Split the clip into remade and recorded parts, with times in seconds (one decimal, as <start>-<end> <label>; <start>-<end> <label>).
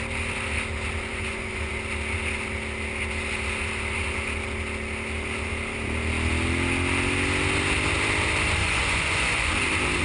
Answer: 0.0-1.1 recorded; 1.1-1.7 remade; 1.7-8.6 recorded; 8.6-9.5 remade; 9.5-10.0 recorded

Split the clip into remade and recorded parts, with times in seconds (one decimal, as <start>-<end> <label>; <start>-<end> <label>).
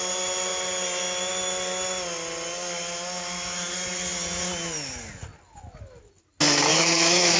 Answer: 0.0-6.7 recorded; 6.7-7.4 remade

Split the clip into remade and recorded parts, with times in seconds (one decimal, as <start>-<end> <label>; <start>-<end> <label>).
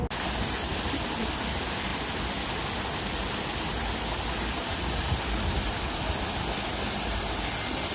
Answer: 0.0-1.9 recorded; 1.9-2.5 remade; 2.5-3.5 recorded; 3.5-6.7 remade; 6.7-7.9 recorded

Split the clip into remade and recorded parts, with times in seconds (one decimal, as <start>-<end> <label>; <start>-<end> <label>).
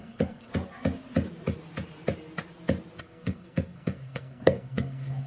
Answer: 0.0-0.5 remade; 0.5-3.0 recorded; 3.0-5.3 remade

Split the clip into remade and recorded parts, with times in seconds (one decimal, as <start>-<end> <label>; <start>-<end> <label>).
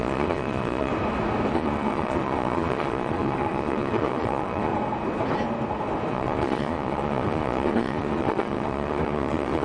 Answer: 0.0-0.9 remade; 0.9-1.5 recorded; 1.5-4.7 remade; 4.7-6.1 recorded; 6.1-9.6 remade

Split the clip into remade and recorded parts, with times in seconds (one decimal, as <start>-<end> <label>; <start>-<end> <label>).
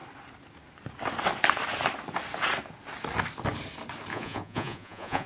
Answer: 0.0-4.1 recorded; 4.1-5.3 remade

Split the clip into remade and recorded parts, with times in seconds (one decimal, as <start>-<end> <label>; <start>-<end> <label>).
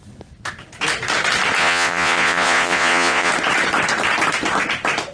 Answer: 0.0-1.6 recorded; 1.6-3.3 remade; 3.3-5.1 recorded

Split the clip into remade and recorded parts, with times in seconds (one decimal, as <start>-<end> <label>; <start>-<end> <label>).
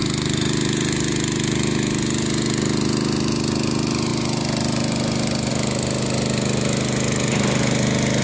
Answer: 0.0-8.2 recorded